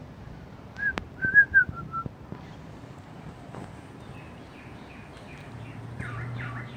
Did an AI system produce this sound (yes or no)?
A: yes